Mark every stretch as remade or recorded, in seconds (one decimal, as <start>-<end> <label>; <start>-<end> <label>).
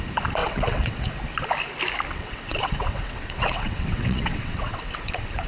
0.0-0.4 recorded; 0.4-1.0 remade; 1.0-2.1 recorded; 2.1-5.5 remade